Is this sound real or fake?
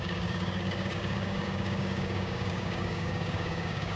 fake